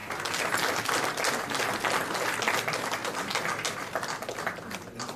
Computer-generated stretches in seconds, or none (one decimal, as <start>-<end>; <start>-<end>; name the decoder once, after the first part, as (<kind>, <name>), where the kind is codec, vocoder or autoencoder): none